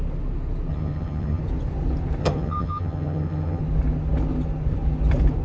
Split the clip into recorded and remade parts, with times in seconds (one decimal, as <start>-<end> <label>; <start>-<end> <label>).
0.0-0.7 recorded; 0.7-1.4 remade; 1.4-2.2 recorded; 2.2-3.6 remade; 3.6-5.4 recorded